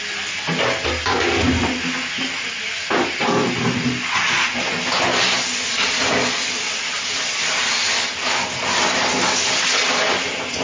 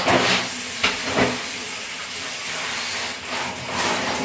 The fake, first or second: second